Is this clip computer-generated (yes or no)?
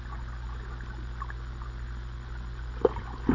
no